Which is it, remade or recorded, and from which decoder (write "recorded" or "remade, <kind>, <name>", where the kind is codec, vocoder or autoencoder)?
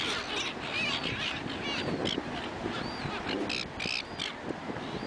recorded